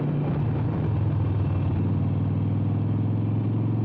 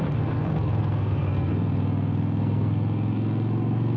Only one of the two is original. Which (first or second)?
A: first